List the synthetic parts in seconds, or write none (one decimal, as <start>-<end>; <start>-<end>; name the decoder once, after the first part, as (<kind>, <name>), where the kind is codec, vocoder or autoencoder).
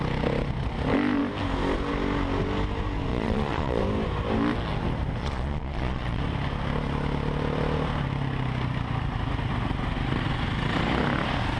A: 3.1-3.8 (vocoder, Vocos); 5.2-6.2